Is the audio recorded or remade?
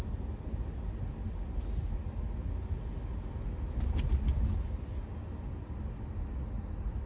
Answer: recorded